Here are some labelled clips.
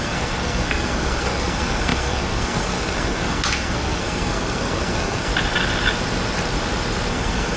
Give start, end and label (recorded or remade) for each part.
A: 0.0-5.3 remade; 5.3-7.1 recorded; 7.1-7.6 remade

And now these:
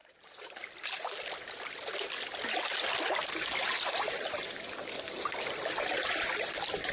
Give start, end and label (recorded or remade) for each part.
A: 0.0-4.1 recorded; 4.1-6.9 remade